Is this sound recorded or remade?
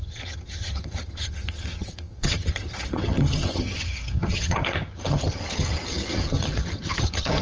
remade